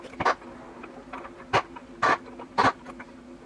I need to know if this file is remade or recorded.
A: recorded